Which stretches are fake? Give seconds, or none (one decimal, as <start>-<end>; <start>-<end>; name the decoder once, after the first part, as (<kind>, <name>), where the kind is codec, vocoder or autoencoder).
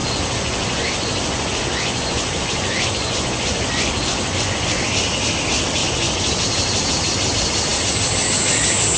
0.0-4.8 (vocoder, Vocos); 5.8-6.4